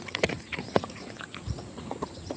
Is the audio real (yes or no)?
no